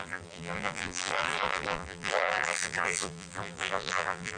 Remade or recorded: remade